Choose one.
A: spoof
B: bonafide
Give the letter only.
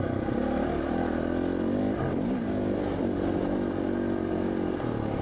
B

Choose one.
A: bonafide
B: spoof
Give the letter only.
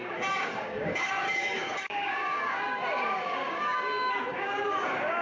B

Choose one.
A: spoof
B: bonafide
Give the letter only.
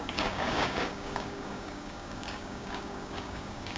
A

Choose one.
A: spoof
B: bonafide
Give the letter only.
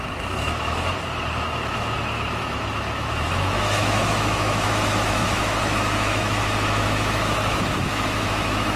A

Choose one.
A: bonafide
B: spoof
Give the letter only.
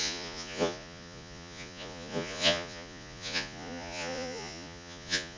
B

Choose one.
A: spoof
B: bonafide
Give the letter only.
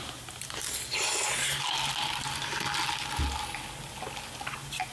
B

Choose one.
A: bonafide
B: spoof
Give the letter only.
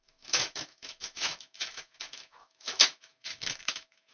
B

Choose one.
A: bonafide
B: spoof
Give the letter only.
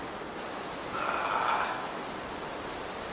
A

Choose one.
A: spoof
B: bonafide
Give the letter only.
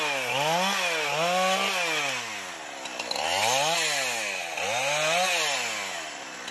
B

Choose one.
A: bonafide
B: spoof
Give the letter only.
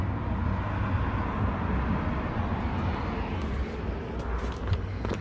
A